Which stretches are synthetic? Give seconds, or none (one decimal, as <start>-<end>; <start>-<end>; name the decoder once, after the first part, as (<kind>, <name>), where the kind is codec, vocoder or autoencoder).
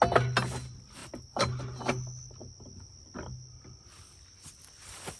none